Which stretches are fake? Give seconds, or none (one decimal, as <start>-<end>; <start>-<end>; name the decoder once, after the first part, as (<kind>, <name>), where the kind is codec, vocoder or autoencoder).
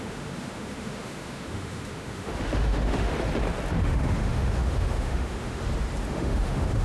0.0-3.1 (autoencoder, DAC-VAE); 3.8-5.6; 6.1-6.8